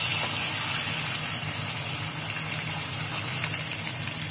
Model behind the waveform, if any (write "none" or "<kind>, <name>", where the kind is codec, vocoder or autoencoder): none